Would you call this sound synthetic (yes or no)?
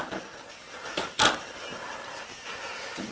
no